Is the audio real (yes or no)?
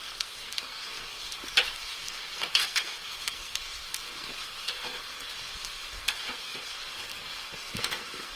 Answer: no